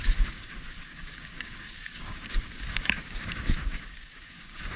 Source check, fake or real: fake